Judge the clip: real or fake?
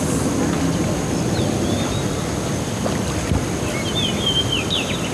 real